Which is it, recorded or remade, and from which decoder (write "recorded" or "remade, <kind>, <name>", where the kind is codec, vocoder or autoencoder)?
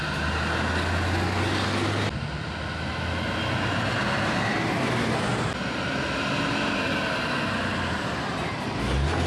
recorded